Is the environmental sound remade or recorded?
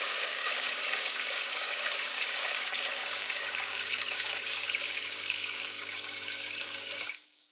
remade